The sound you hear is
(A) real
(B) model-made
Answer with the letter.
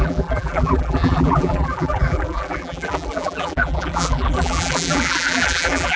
B